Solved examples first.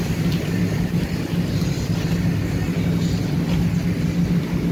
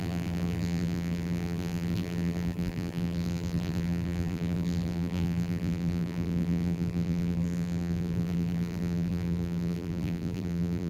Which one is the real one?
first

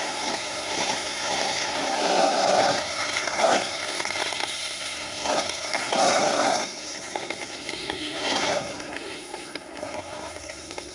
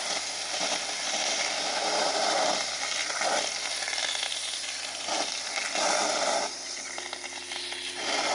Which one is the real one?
second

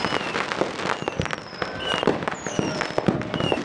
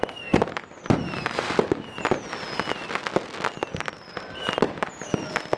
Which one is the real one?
second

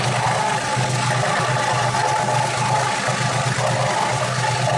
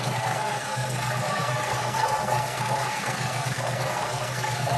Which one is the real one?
first